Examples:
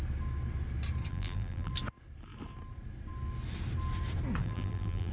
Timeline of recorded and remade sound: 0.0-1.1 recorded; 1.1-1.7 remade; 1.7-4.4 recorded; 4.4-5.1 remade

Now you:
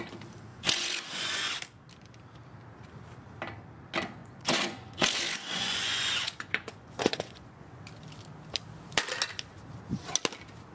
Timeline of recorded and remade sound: 0.0-0.5 recorded; 0.5-1.5 remade; 1.5-4.2 recorded; 4.2-7.8 remade; 7.8-10.7 recorded